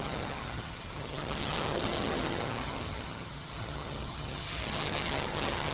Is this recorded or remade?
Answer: remade